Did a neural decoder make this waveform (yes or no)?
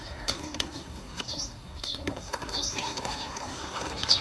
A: yes